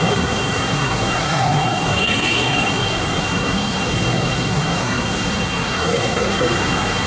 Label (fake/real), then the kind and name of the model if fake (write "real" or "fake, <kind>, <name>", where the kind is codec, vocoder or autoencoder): fake, codec, SNAC